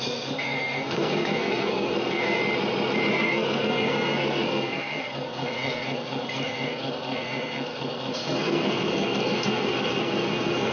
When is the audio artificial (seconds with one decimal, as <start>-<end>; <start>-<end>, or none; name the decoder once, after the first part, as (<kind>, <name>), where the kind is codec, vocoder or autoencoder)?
0.0-2.4 (codec, SNAC); 3.1-10.7